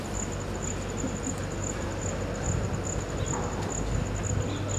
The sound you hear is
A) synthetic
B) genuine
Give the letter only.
B